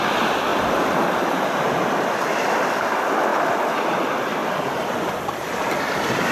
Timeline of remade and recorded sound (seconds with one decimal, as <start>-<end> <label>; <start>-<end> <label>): 0.0-0.5 remade; 0.5-2.5 recorded; 2.5-3.3 remade; 3.3-3.9 recorded; 3.9-4.4 remade; 4.4-5.8 recorded; 5.8-6.3 remade